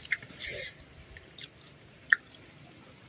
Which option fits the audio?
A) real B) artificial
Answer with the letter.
B